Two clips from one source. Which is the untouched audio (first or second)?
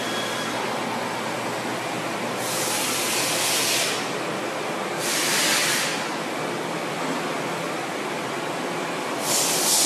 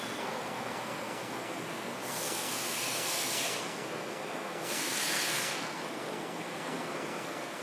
first